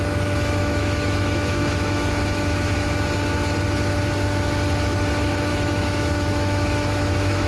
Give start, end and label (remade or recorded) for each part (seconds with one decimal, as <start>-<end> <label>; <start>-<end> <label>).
0.0-0.6 recorded; 0.6-2.9 remade; 2.9-5.5 recorded; 5.5-7.5 remade